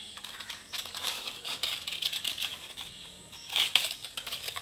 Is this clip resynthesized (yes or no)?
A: yes